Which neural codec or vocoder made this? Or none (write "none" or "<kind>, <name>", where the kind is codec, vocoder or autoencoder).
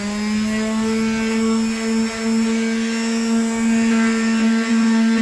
none